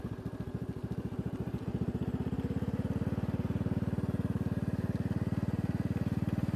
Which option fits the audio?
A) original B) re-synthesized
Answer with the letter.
A